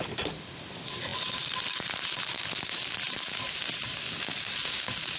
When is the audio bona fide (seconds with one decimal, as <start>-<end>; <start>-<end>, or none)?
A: 0.0-5.2